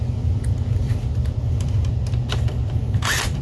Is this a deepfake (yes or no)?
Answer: yes